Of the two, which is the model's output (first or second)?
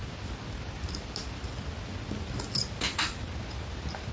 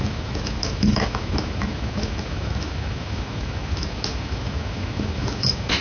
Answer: second